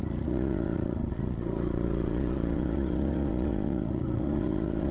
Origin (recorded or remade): remade